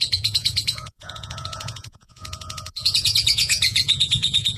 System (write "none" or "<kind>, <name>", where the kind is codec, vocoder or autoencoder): vocoder, Vocos